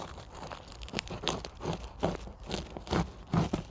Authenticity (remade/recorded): remade